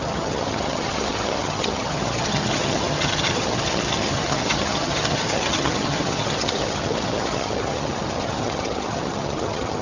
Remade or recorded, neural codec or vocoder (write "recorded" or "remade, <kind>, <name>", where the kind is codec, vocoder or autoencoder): remade, vocoder, HiFi-GAN